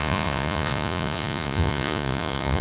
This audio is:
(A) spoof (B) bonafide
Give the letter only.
A